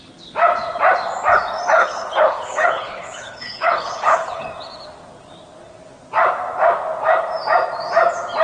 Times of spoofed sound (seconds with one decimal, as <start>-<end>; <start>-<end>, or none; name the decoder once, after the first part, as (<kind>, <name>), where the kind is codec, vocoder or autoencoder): 1.8-4.4 (codec, HILCodec)